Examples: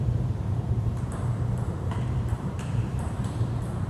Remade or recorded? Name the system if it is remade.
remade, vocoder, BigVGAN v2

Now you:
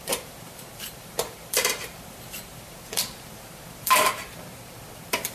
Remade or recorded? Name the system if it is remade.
remade, vocoder, BigVGAN v2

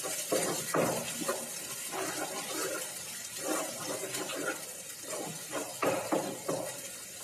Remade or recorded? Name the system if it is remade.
remade, vocoder, BigVGAN v2